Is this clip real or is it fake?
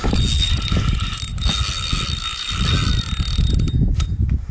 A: real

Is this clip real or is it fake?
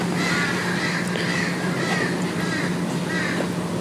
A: real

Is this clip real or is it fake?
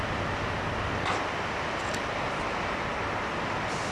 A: real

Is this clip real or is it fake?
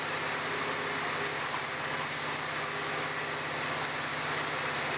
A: real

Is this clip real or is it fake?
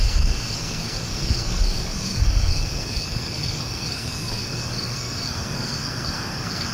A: fake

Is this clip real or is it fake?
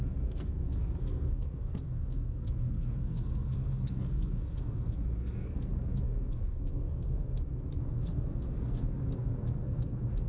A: fake